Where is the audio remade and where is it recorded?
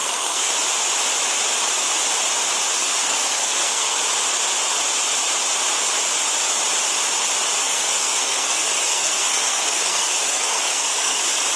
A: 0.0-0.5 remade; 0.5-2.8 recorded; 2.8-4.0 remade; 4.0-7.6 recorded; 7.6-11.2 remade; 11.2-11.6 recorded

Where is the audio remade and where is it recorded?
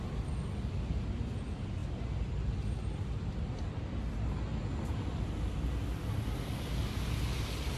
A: 0.0-7.8 recorded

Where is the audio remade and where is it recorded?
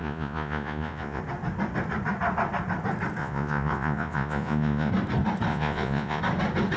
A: 0.0-1.2 remade; 1.2-3.2 recorded; 3.2-4.9 remade; 4.9-5.5 recorded; 5.5-6.2 remade; 6.2-6.8 recorded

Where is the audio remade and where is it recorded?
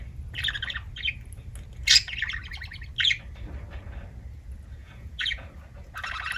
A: 0.0-4.8 recorded; 4.8-5.5 remade; 5.5-6.4 recorded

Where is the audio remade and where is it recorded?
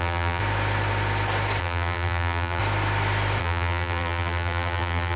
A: 0.0-0.4 remade; 0.4-1.6 recorded; 1.6-2.6 remade; 2.6-3.4 recorded; 3.4-5.2 remade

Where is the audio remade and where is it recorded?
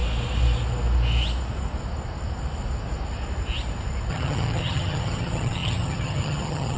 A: 0.0-4.1 recorded; 4.1-6.8 remade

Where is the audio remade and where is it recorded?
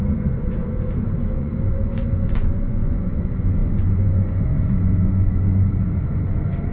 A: 0.0-6.7 remade